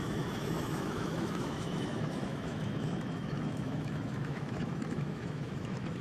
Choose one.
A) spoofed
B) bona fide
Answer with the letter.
A